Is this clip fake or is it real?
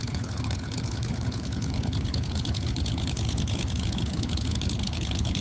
fake